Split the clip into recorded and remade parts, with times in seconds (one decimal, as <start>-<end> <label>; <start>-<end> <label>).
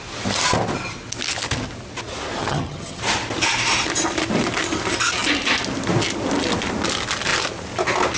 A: 0.0-2.4 recorded; 2.4-3.0 remade; 3.0-8.2 recorded